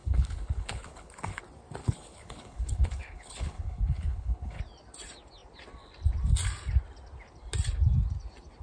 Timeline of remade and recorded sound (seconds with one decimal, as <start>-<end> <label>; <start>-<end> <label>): 0.0-1.4 remade; 1.4-1.8 recorded; 1.8-4.6 remade; 4.6-8.6 recorded